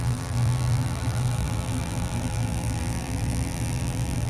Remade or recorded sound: remade